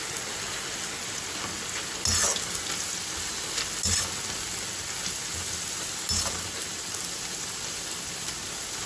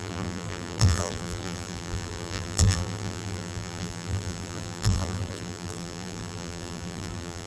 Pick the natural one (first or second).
first